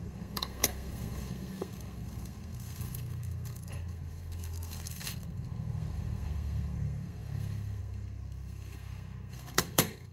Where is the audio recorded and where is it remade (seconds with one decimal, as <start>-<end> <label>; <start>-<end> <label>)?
0.0-10.1 remade